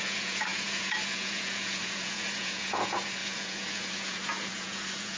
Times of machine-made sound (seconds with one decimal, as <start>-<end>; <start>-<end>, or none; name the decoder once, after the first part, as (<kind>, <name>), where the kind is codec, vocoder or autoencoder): 0.0-5.2 (vocoder, Vocos)